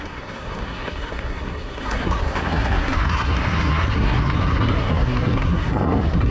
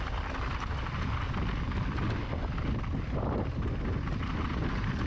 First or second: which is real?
second